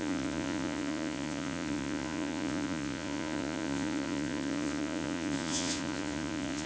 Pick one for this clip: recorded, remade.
remade